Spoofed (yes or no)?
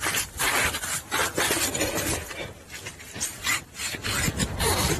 yes